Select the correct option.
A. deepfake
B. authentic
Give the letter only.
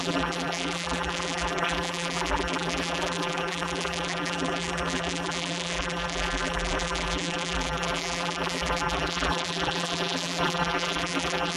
A